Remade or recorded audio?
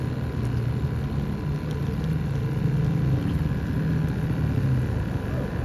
recorded